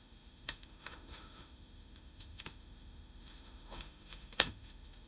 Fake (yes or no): yes